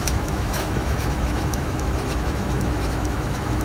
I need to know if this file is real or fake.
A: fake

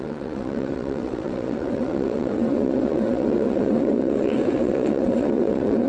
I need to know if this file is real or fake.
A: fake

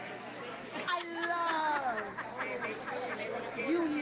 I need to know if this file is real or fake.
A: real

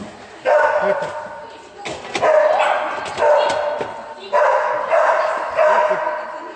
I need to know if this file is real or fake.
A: real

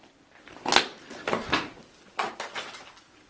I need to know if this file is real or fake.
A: real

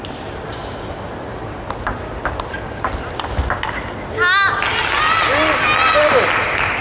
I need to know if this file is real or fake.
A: real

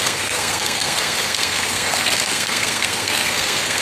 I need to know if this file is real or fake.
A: fake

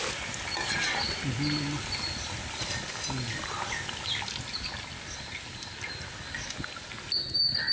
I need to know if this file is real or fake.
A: real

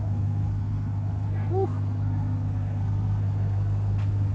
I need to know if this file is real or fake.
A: fake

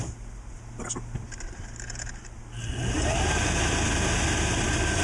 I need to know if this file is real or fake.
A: fake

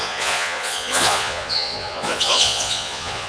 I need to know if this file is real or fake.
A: fake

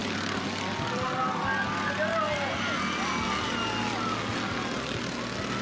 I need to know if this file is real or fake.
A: real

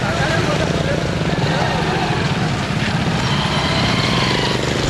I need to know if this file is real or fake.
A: real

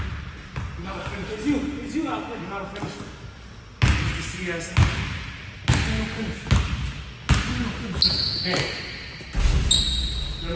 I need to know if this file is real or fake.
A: real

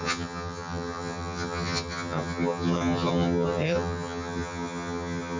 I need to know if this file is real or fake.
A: fake